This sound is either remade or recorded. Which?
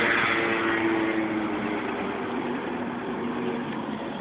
recorded